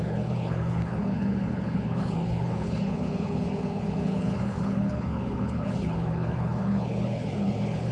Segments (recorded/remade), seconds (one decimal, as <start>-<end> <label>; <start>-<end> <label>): 0.0-7.9 remade